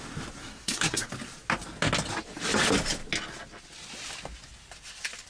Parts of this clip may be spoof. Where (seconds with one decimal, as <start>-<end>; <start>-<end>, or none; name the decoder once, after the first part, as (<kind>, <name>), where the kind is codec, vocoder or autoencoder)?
0.4-1.1 (codec, SNAC)